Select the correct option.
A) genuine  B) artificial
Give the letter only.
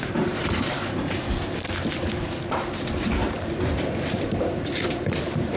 B